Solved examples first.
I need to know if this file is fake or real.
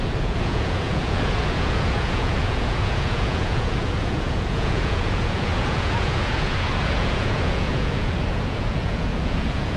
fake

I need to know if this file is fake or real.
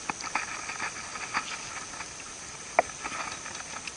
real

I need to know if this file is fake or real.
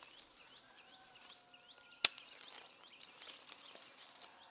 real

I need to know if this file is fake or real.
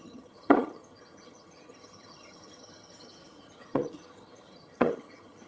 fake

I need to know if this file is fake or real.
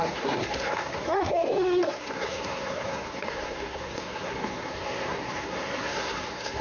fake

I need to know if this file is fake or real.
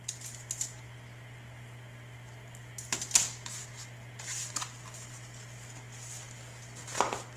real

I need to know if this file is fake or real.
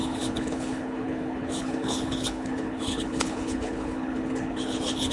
fake